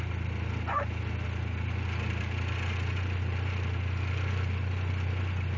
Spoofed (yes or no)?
no